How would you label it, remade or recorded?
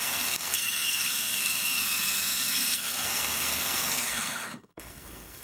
remade